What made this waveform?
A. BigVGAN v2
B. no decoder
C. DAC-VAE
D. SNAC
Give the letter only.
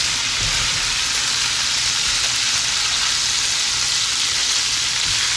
B